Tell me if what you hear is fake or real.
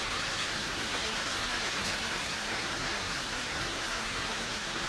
fake